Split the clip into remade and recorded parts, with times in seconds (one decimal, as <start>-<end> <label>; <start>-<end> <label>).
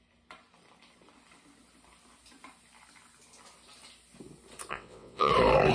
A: 0.0-4.7 recorded; 4.7-5.3 remade; 5.3-5.7 recorded